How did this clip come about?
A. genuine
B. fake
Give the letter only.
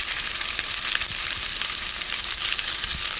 A